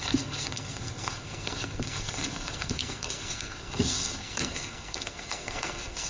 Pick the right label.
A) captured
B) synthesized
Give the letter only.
B